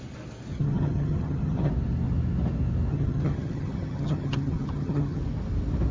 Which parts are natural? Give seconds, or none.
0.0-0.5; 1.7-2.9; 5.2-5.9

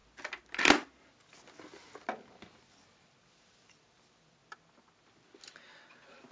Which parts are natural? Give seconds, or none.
0.0-6.3

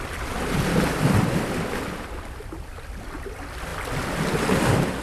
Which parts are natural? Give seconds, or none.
0.0-5.0

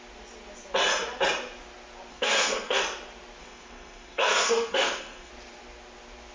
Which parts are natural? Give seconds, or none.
0.0-2.1; 2.8-3.4; 5.3-6.3

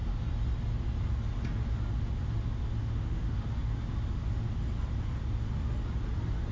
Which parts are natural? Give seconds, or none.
0.0-2.8; 3.5-6.5